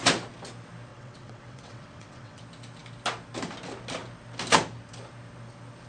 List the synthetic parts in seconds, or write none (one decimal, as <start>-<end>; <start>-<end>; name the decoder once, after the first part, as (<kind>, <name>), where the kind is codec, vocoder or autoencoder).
0.9-2.4 (vocoder, WaveNeXt)